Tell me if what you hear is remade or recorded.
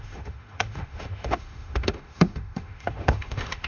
remade